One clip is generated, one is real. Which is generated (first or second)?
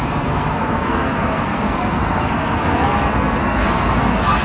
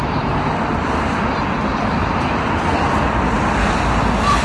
first